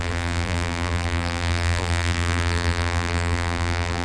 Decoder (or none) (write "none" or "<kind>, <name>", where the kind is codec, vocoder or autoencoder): vocoder, BigVGAN v2